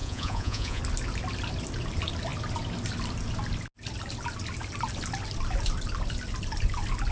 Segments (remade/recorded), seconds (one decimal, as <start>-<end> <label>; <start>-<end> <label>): 0.0-0.8 remade; 0.8-7.1 recorded